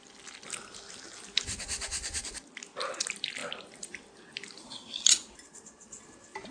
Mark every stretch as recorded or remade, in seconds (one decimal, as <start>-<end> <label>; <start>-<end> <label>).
0.0-6.5 recorded